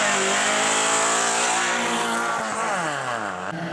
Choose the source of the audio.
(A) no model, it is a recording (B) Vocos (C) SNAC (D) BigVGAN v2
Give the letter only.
A